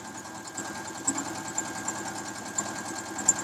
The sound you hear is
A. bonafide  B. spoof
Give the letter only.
A